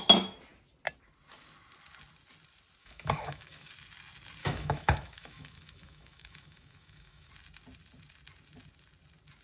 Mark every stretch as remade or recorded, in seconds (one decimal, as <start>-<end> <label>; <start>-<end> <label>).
0.0-2.8 recorded; 2.8-3.7 remade; 3.7-4.4 recorded; 4.4-7.3 remade; 7.3-9.4 recorded

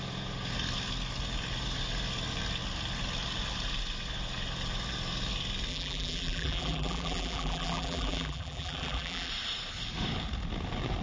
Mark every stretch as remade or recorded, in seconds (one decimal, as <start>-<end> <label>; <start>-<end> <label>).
0.0-5.7 recorded; 5.7-9.3 remade; 9.3-11.0 recorded

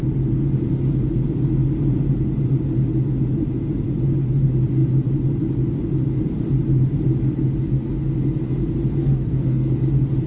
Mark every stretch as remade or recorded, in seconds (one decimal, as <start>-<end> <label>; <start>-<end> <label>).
0.0-9.0 recorded; 9.0-9.7 remade; 9.7-10.3 recorded

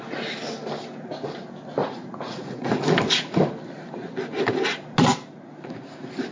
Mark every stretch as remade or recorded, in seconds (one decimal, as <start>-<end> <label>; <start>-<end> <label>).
0.0-1.8 recorded; 1.8-2.8 remade; 2.8-6.3 recorded

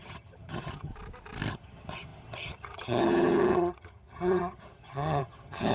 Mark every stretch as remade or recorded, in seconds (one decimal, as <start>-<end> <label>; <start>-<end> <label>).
0.0-0.9 remade; 0.9-1.5 recorded; 1.5-5.7 remade

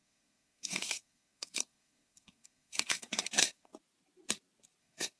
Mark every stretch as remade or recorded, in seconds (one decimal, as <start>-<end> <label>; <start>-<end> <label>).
0.0-3.7 remade; 3.7-4.8 recorded; 4.8-5.2 remade

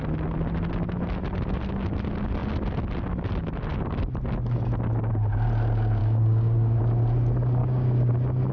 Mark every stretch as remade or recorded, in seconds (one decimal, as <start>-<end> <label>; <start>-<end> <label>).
0.0-6.0 recorded; 6.0-6.8 remade; 6.8-7.6 recorded; 7.6-8.1 remade; 8.1-8.5 recorded